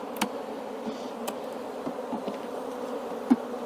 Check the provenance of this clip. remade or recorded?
recorded